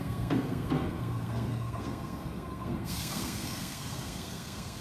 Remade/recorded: remade